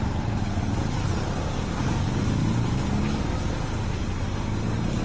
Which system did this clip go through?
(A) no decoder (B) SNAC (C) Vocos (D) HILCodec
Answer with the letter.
A